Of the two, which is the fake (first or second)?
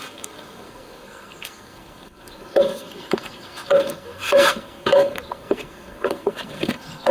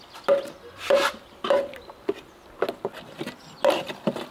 first